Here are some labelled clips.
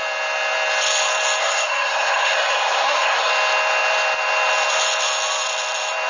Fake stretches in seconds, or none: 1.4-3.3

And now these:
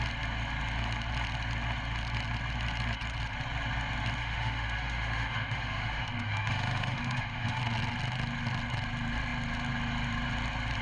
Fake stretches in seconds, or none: 4.2-7.6

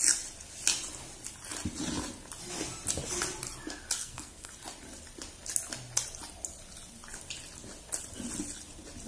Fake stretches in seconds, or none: 4.0-4.5